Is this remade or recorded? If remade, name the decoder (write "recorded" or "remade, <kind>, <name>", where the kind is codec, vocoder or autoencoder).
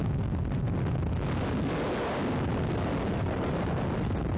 recorded